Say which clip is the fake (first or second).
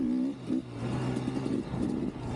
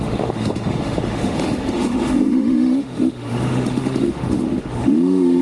second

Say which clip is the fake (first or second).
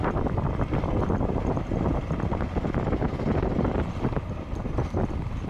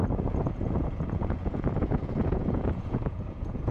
second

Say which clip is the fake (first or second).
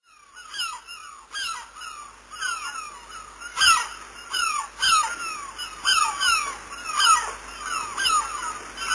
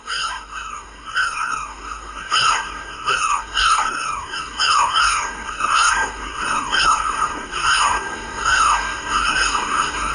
second